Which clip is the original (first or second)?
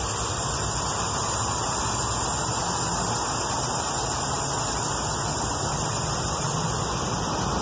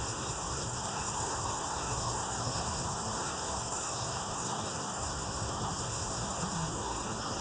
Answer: first